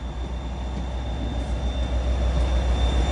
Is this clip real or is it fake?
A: real